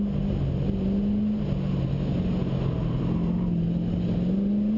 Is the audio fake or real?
real